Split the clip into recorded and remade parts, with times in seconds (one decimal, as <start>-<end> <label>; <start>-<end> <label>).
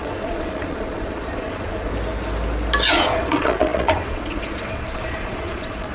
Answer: 0.0-1.9 remade; 1.9-2.9 recorded; 2.9-5.9 remade